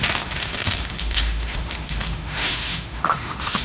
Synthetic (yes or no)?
yes